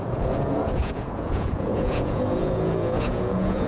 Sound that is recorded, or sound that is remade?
remade